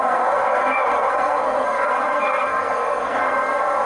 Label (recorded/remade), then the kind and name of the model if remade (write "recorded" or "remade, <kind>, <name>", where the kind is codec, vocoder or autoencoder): remade, codec, SNAC